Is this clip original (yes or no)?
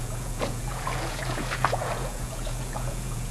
no